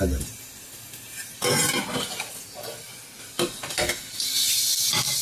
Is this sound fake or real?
real